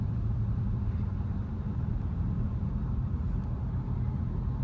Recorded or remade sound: remade